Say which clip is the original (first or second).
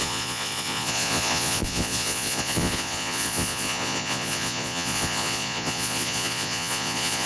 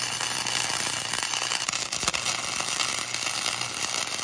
second